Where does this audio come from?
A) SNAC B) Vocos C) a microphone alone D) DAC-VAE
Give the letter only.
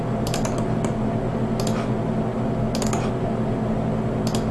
C